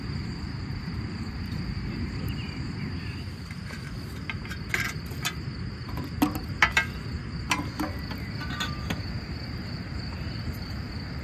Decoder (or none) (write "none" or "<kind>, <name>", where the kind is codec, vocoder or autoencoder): none